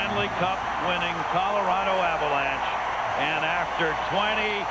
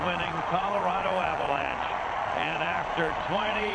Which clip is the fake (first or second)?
second